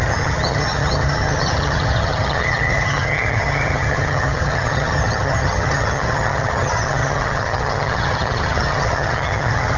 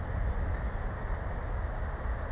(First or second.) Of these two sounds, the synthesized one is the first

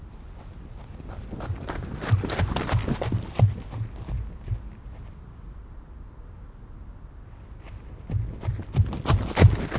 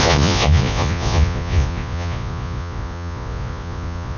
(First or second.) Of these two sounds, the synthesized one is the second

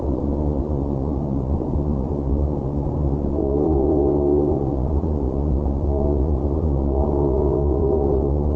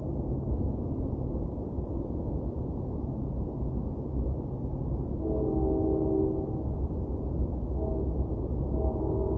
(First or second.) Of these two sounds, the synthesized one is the first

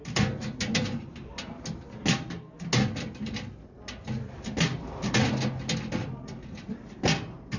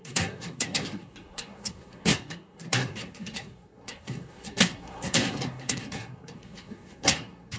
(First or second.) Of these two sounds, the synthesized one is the second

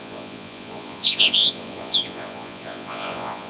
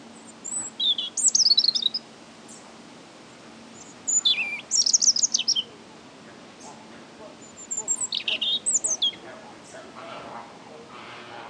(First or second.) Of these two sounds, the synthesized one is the first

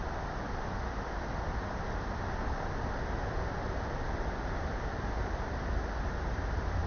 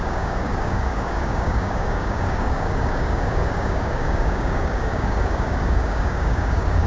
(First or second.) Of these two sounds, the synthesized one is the second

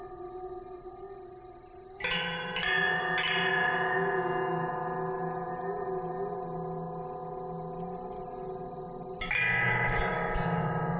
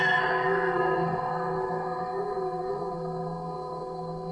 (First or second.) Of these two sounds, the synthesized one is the second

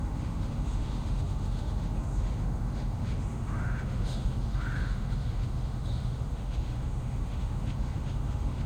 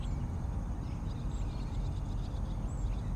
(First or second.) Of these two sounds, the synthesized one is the first